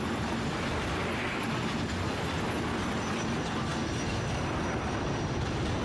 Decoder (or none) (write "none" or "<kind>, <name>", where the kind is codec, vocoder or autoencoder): none